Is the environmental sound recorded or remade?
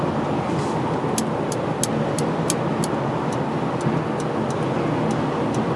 recorded